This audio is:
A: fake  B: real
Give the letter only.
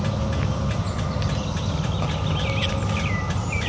B